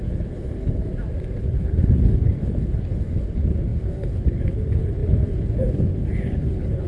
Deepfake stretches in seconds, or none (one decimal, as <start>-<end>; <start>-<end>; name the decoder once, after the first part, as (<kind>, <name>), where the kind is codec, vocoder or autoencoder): 0.0-0.9 (codec, HILCodec); 1.4-6.9